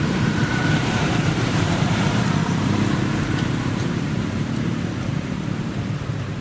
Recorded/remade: remade